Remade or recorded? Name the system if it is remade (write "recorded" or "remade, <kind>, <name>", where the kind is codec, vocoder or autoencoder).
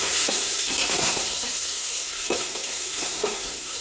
remade, codec, SNAC